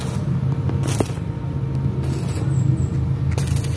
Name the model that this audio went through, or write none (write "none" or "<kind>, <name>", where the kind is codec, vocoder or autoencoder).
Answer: none